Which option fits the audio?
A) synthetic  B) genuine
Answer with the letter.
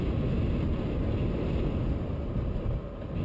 B